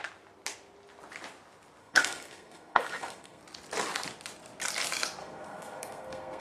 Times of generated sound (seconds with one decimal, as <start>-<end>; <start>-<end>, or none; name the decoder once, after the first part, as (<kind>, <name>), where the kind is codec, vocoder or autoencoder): 1.8-3.4 (codec, SNAC); 5.2-6.4

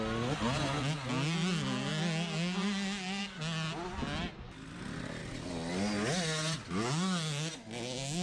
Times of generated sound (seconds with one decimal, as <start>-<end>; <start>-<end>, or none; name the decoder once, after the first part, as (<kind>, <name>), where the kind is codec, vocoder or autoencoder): none

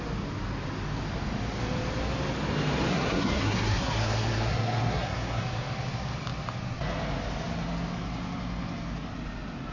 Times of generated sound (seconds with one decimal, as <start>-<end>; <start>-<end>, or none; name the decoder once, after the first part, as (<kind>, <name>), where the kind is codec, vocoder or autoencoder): 2.9-5.4 (codec, SNAC)

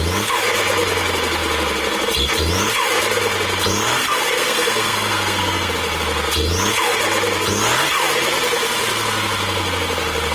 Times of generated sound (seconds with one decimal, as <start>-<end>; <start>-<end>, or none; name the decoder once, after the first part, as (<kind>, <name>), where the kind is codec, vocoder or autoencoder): 4.0-5.7 (codec, SNAC)

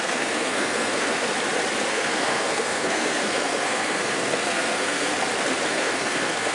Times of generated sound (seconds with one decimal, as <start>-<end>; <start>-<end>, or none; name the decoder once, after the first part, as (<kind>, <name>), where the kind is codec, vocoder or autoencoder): 0.0-1.3 (codec, SNAC); 1.9-5.1; 5.7-6.5

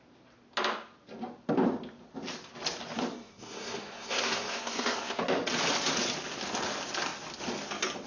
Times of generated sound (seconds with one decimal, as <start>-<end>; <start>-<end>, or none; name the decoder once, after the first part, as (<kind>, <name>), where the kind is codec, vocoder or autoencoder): 3.1-5.2 (codec, SNAC)

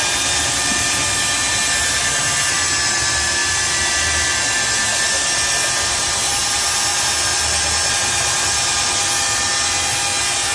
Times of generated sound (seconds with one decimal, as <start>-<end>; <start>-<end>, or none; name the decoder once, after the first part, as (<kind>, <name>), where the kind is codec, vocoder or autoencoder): none

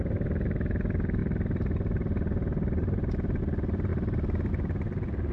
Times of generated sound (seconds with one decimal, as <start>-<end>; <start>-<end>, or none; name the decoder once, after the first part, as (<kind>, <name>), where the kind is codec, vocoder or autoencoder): none